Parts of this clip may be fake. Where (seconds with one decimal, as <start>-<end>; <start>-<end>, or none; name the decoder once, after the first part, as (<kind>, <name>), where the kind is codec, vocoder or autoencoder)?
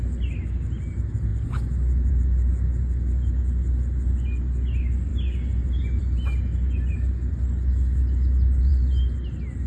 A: none